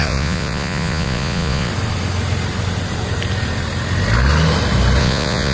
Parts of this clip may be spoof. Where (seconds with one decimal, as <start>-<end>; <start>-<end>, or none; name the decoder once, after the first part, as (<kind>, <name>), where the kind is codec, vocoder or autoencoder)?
0.0-1.7 (vocoder, Vocos); 5.0-5.5